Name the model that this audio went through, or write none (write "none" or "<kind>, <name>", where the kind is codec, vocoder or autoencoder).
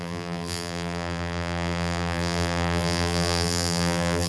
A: vocoder, BigVGAN v2